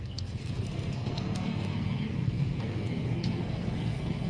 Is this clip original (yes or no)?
no